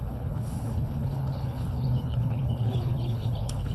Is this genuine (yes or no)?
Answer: no